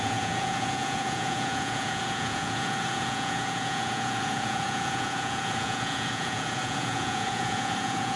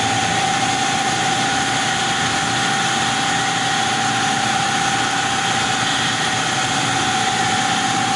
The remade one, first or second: first